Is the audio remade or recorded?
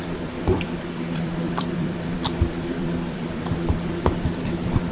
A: remade